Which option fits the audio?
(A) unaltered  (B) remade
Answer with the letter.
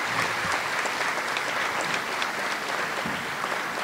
A